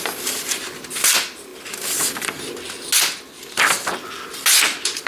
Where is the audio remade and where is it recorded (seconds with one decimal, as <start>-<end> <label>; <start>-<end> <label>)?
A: 0.0-1.5 remade; 1.5-4.6 recorded; 4.6-5.1 remade